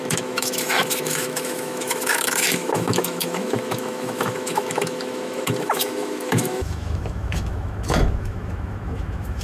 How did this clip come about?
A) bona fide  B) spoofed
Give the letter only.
B